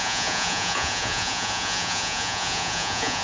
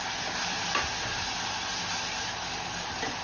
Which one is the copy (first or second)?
first